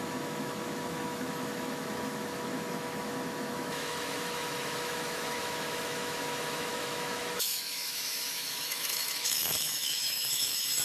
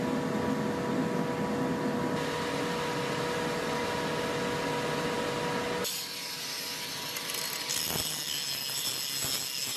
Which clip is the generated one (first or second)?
first